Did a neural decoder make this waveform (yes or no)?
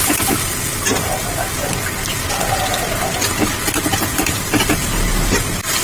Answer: no